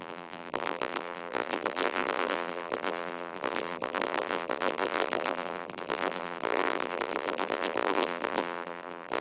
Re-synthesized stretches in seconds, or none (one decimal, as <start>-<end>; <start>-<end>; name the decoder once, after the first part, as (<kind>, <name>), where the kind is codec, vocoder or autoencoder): 0.0-9.2 (vocoder, BigVGAN v2)